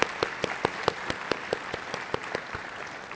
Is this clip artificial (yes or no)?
no